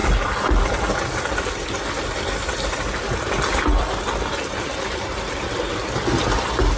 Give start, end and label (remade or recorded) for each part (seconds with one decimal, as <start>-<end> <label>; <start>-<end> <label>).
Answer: 0.0-3.0 remade; 3.0-3.7 recorded; 3.7-5.6 remade; 5.6-6.8 recorded